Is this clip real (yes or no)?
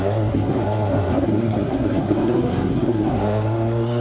no